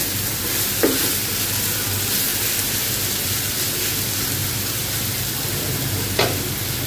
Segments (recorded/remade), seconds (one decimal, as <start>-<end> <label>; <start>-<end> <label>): 0.0-4.4 recorded; 4.4-5.0 remade; 5.0-6.9 recorded